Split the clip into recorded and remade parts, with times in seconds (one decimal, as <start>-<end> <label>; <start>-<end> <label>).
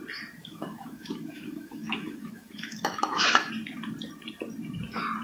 0.0-0.4 recorded; 0.4-3.5 remade; 3.5-5.2 recorded